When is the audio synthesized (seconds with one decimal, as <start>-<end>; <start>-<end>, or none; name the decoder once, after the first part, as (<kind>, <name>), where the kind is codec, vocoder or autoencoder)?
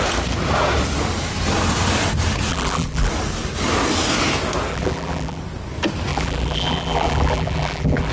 2.5-3.1 (vocoder, BigVGAN v2); 4.7-5.4; 6.1-8.1